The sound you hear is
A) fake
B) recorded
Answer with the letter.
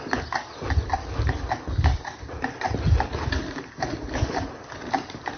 B